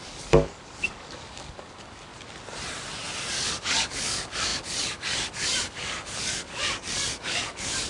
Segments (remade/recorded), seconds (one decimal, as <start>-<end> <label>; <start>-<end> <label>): 0.0-2.1 remade; 2.1-3.2 recorded; 3.2-7.9 remade